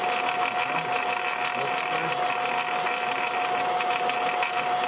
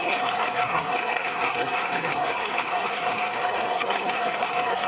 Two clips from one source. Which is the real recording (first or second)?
first